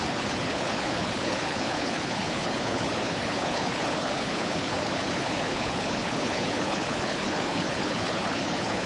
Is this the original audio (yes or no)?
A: no